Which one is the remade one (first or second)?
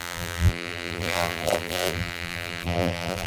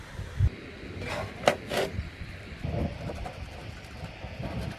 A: first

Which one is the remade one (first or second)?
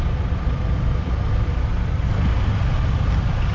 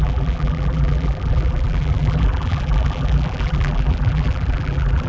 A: second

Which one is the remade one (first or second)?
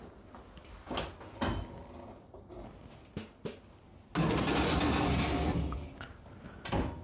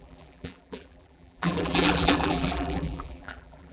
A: second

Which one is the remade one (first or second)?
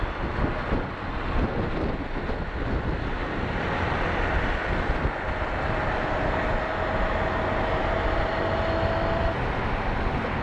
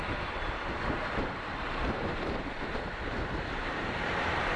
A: second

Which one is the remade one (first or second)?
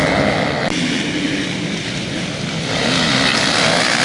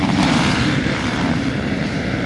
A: second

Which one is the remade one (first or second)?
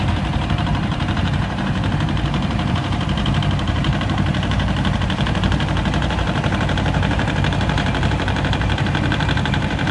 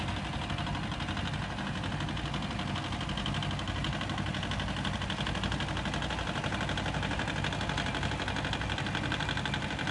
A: first